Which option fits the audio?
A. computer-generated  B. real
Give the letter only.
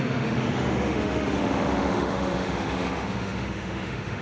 A